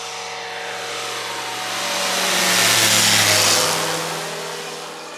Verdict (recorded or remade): recorded